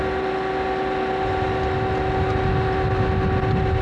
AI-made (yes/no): no